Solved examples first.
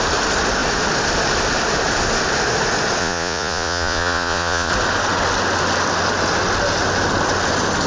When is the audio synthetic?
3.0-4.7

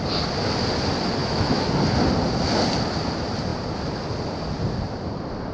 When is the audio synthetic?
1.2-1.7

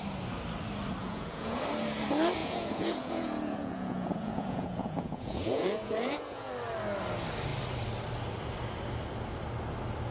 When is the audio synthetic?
1.0-1.6; 2.4-6.5

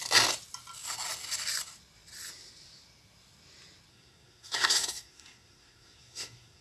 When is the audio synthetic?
3.9-6.6

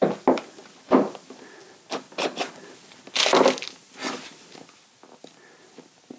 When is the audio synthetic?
none

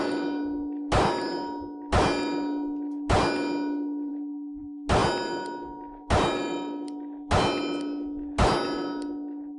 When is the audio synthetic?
none

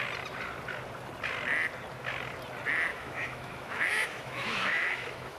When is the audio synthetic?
2.9-5.4

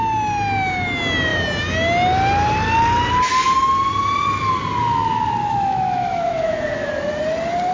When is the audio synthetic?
5.4-6.9